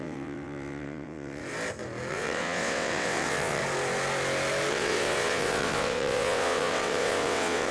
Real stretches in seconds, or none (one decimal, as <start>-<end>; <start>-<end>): 1.4-2.1; 3.6-4.7